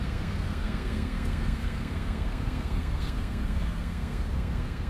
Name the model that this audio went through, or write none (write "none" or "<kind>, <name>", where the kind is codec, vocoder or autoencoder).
codec, SNAC